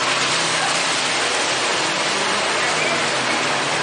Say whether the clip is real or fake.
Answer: real